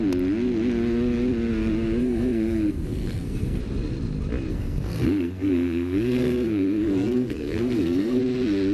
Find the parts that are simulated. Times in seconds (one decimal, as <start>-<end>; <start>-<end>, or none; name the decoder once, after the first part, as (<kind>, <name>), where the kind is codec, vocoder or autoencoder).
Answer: 2.0-3.6 (codec, SNAC); 4.5-8.2